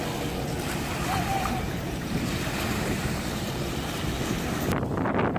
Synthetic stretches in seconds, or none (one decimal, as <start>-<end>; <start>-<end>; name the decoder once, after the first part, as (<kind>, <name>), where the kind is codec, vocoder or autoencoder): 1.3-4.5 (vocoder, BigVGAN v2)